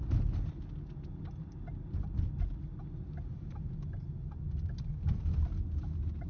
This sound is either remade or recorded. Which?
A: recorded